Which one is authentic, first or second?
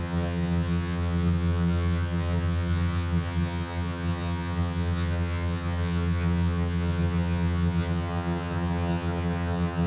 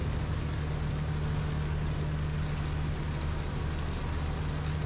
second